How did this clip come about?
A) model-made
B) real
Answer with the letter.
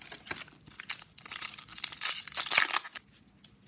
B